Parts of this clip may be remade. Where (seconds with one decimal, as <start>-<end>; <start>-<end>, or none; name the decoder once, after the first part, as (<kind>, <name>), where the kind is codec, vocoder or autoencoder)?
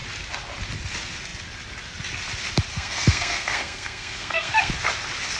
2.7-4.7 (codec, SNAC)